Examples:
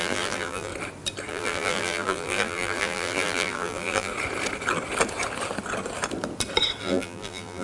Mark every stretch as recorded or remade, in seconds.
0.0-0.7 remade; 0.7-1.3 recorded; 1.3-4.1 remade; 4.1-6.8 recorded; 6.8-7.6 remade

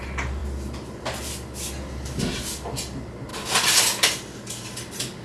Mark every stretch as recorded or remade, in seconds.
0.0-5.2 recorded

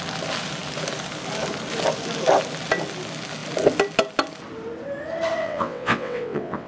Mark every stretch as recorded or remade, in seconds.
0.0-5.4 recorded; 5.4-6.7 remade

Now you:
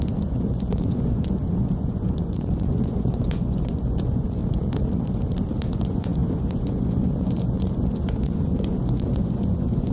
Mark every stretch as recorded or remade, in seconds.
0.0-4.4 remade; 4.4-5.7 recorded; 5.7-9.9 remade

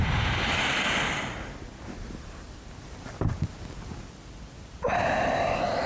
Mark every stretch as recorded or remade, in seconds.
0.0-5.9 recorded